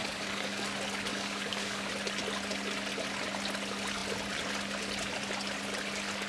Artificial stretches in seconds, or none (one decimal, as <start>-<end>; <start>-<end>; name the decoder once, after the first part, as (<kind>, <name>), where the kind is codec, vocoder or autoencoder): 0.0-0.6 (codec, DAC); 1.1-1.9